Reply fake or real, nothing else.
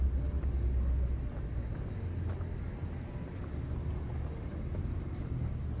real